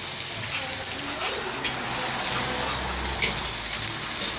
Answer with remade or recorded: recorded